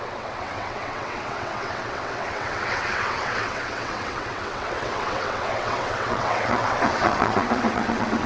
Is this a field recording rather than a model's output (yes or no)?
no